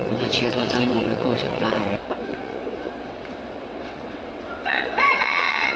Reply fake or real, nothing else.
fake